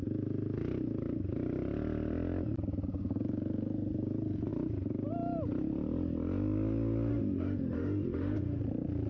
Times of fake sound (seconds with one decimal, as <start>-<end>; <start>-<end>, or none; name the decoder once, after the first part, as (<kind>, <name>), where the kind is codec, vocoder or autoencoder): 7.1-8.6 (autoencoder, DAC-VAE)